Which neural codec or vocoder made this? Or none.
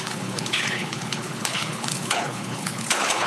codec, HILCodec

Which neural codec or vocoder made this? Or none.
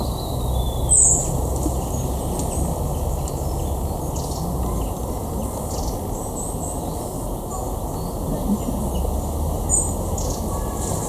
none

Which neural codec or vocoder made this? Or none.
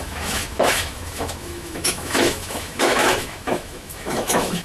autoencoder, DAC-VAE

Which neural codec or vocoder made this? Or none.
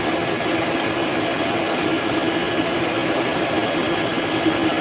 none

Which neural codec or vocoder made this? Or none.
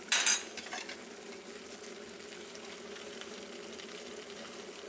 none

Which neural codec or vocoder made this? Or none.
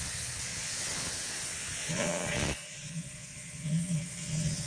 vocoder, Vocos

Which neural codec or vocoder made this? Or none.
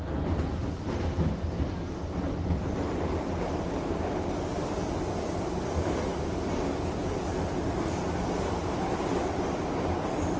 none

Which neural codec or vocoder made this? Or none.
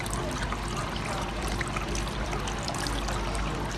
none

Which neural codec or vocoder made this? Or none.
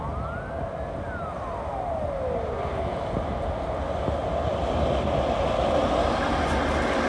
none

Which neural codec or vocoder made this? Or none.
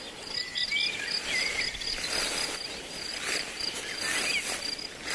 none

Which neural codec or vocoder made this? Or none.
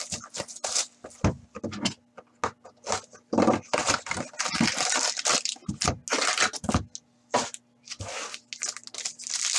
none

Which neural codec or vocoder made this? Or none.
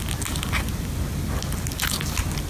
none